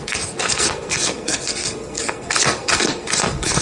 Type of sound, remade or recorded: remade